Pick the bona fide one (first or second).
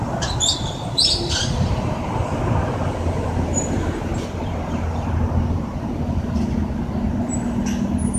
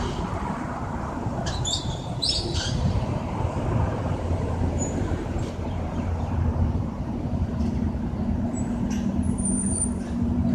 first